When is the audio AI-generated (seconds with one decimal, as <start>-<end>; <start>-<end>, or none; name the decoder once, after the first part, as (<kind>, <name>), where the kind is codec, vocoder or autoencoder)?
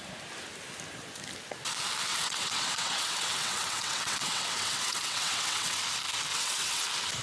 2.1-5.8 (vocoder, WaveNeXt); 6.3-6.8